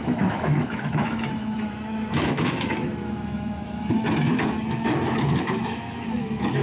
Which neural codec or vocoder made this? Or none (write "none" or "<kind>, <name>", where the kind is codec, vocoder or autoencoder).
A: autoencoder, DAC-VAE